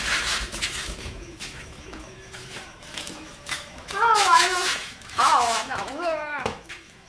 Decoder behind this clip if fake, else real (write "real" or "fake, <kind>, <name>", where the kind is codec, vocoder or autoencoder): fake, autoencoder, DAC-VAE